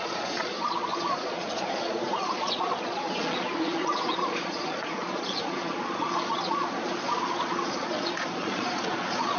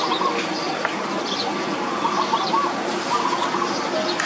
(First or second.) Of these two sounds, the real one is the second